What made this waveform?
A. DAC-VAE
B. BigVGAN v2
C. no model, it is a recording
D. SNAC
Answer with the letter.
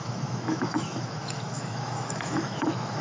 A